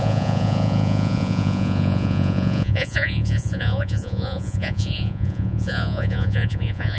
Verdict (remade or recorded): remade